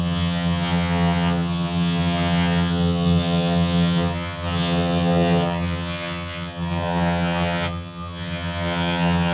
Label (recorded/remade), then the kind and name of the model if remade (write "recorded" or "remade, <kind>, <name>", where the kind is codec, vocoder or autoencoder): remade, vocoder, HiFi-GAN